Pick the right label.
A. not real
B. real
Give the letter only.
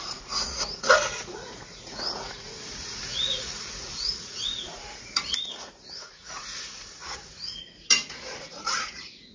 A